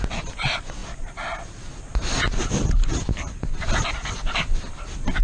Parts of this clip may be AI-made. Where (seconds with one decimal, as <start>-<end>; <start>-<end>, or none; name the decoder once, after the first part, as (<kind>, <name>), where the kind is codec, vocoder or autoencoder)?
none